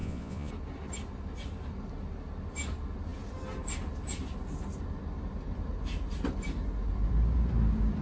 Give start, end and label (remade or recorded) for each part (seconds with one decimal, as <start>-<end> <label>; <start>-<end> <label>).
0.0-0.5 remade; 0.5-8.0 recorded